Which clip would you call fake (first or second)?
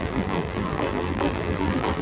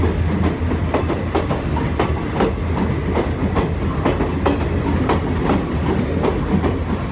first